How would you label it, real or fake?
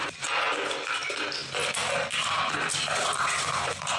fake